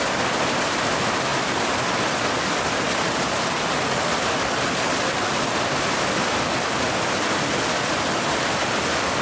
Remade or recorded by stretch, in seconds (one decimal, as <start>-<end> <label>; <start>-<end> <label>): 0.0-9.2 recorded